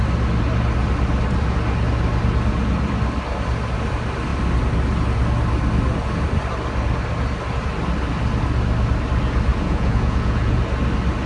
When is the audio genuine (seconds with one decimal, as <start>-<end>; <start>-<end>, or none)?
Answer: 0.0-9.5; 10.6-11.3